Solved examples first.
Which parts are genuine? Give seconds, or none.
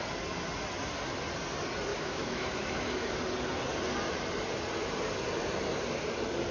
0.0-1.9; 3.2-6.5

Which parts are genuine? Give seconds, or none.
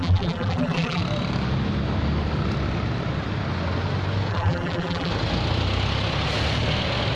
1.0-4.3; 5.1-7.2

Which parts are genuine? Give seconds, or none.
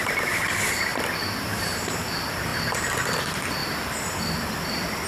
0.9-1.8; 2.5-3.2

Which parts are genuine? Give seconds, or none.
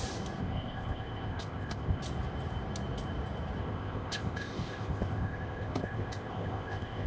0.0-0.4; 2.0-3.6